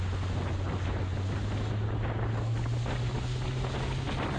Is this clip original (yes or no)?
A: yes